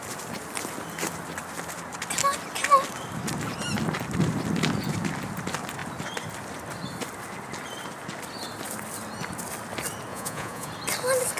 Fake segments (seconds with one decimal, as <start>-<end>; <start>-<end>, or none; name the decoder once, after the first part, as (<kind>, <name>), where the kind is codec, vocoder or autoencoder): 10.1-10.7 (vocoder, Vocos)

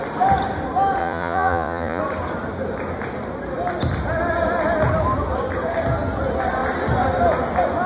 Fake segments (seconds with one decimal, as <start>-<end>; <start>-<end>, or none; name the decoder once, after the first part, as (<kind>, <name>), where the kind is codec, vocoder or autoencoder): 1.0-2.0 (vocoder, Vocos)

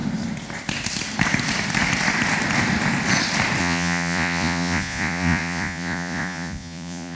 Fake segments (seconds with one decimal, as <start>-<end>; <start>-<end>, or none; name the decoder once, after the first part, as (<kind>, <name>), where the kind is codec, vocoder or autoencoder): 3.6-7.1 (vocoder, Vocos)

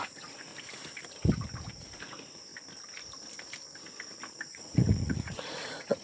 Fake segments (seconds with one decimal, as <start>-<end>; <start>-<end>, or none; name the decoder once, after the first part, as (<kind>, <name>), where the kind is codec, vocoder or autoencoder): 0.0-0.5 (vocoder, Vocos); 1.7-2.5; 4.5-6.0

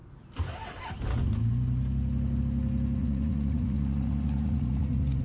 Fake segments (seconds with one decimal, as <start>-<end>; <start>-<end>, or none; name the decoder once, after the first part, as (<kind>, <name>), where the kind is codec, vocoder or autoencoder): 3.0-5.2 (vocoder, Vocos)

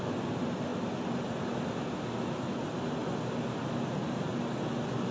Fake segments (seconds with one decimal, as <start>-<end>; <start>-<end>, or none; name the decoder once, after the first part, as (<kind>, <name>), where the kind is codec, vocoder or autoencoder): none